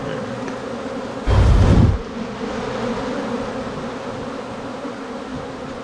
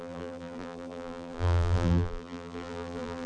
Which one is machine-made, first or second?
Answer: second